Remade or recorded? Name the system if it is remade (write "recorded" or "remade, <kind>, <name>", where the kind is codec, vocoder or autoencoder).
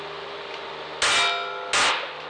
recorded